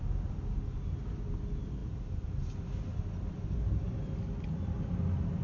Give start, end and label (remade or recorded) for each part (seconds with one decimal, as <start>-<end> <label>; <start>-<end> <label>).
0.0-5.4 recorded